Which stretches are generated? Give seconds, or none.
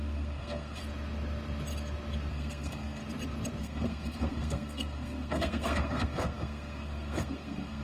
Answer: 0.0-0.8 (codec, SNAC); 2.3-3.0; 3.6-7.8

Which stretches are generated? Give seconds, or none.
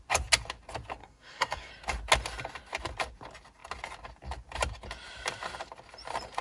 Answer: 1.0-1.7 (codec, SNAC)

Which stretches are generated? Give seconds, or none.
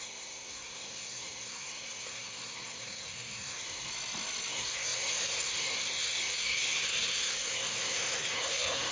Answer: 0.0-3.9 (codec, SNAC); 4.5-8.9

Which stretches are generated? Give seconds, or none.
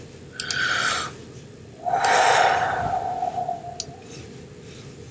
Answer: none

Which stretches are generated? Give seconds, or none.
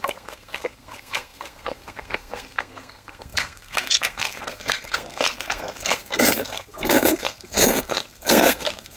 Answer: 0.0-9.0 (codec, SNAC)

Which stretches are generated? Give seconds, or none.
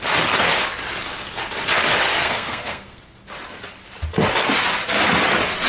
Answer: 2.2-3.0 (codec, SNAC)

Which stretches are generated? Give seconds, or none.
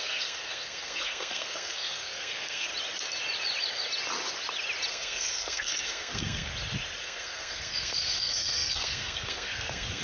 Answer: 0.0-2.7 (codec, SNAC); 4.9-6.5; 7.0-10.0